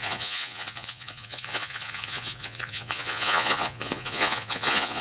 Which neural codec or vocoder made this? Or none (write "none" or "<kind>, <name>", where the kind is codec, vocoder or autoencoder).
vocoder, Vocos